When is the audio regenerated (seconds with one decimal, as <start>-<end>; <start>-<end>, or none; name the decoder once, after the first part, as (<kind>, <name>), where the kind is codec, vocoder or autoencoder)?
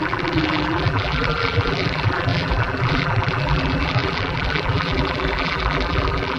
0.0-6.4 (vocoder, BigVGAN v2)